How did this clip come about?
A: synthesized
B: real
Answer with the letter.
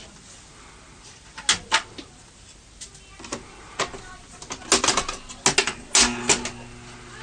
B